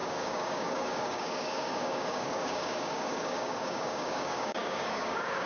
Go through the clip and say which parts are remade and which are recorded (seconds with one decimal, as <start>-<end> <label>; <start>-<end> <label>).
0.0-5.5 remade

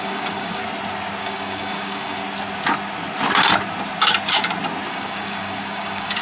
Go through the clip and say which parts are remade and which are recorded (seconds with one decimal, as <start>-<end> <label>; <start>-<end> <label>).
0.0-0.6 remade; 0.6-1.2 recorded; 1.2-2.2 remade; 2.2-4.9 recorded; 4.9-6.2 remade

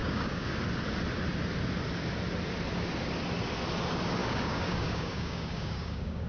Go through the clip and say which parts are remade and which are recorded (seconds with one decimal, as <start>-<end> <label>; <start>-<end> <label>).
0.0-0.6 remade; 0.6-4.2 recorded; 4.2-6.3 remade